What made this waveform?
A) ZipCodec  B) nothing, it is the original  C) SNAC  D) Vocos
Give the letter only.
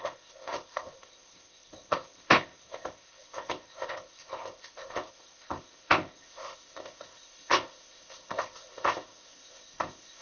A